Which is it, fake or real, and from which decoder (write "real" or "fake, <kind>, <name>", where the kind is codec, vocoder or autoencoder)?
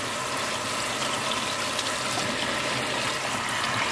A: real